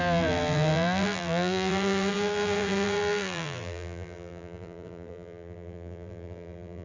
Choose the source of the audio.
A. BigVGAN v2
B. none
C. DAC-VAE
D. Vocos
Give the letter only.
A